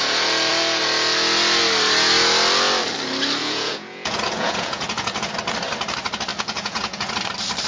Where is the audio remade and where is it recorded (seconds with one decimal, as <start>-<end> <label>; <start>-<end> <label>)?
0.0-3.4 recorded; 3.4-5.3 remade; 5.3-6.3 recorded; 6.3-7.1 remade; 7.1-7.7 recorded